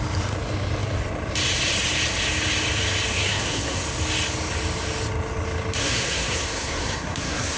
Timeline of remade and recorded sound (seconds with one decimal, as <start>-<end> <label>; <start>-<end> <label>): 0.0-3.1 recorded; 3.1-3.8 remade; 3.8-5.8 recorded; 5.8-7.6 remade